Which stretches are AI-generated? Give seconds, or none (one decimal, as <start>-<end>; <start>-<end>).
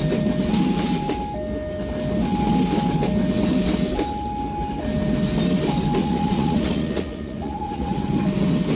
6.0-8.0